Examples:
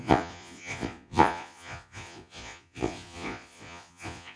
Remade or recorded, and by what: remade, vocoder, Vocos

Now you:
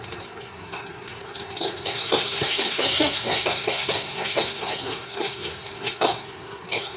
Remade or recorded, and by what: remade, codec, SNAC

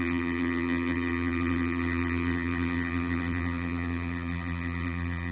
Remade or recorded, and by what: remade, vocoder, BigVGAN v2